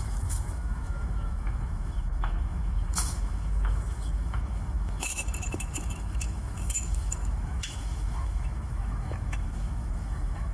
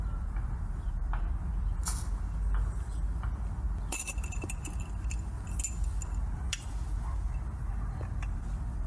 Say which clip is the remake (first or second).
first